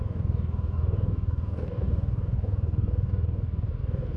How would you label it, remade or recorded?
remade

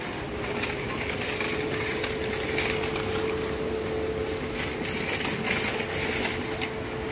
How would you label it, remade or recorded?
recorded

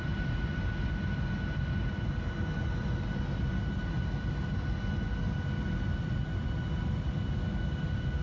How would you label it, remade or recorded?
recorded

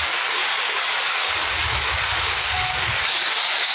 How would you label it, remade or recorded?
remade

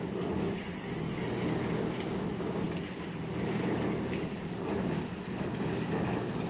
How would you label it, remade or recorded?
recorded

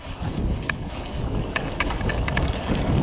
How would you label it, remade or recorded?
remade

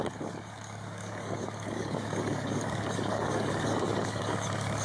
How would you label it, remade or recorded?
remade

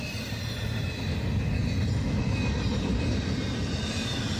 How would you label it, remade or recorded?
recorded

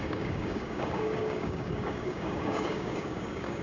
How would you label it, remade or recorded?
remade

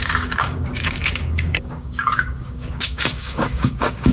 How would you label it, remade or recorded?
remade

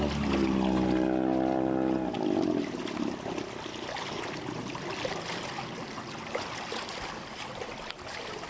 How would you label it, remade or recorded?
recorded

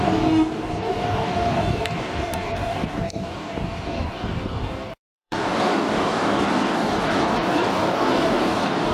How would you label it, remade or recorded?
remade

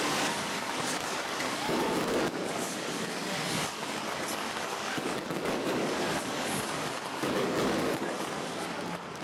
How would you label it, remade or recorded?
remade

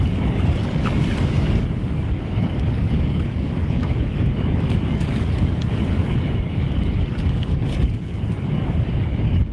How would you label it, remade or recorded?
remade